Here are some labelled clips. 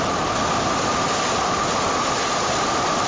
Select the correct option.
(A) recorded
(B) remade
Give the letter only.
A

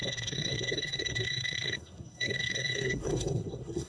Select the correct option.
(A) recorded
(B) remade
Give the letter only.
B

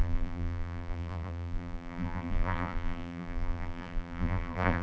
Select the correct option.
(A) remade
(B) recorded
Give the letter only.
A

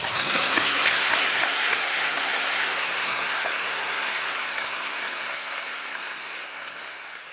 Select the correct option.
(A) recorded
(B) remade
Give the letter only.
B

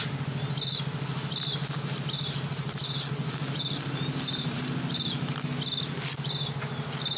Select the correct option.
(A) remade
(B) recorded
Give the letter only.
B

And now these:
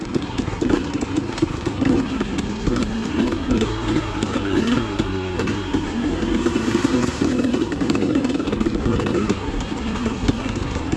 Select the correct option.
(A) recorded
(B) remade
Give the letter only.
B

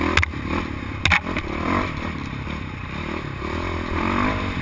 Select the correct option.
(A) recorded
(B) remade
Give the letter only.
A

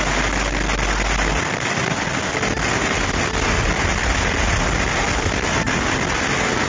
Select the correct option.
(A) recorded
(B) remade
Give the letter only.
A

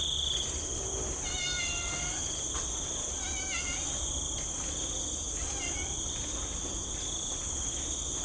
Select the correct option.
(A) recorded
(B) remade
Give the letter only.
A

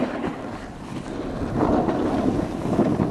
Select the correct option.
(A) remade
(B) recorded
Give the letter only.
B